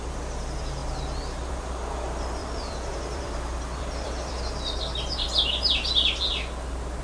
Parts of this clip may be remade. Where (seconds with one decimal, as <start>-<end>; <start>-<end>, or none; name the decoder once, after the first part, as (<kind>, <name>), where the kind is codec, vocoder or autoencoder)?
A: 2.4-4.4 (vocoder, BigVGAN v2)